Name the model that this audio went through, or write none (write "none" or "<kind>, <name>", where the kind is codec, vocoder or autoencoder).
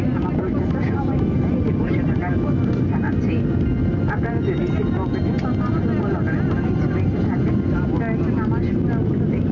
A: none